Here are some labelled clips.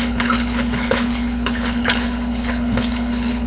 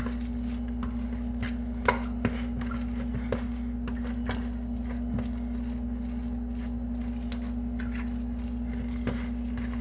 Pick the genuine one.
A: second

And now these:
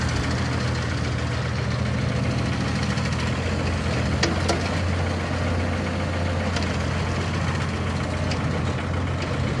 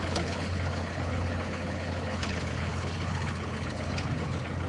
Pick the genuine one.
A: first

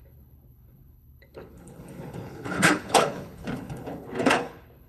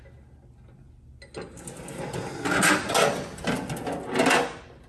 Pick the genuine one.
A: second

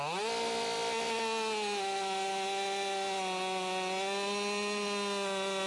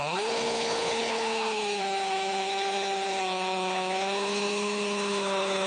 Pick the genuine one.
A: first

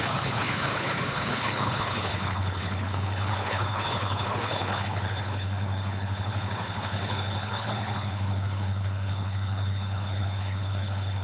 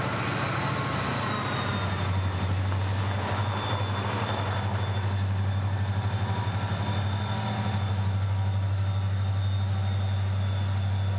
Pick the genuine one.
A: second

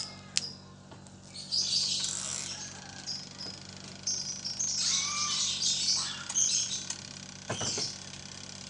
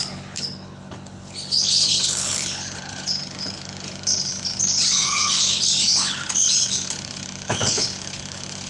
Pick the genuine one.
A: first